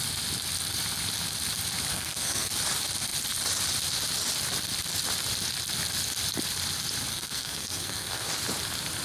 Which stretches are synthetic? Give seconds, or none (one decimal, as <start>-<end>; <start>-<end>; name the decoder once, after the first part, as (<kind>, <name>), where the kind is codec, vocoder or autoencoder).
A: 1.9-2.5 (codec, SNAC); 7.1-8.3